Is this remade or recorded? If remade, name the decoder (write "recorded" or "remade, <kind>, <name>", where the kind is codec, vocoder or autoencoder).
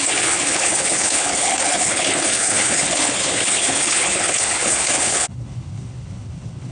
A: remade, codec, HILCodec